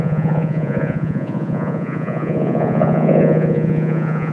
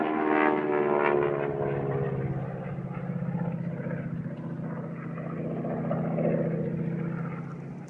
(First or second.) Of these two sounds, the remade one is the first